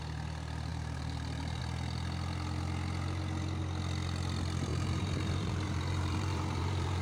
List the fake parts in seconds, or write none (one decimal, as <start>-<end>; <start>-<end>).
0.7-1.6; 4.7-7.0